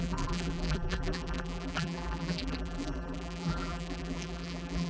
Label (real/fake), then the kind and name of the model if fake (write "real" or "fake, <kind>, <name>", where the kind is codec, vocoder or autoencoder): fake, vocoder, BigVGAN v2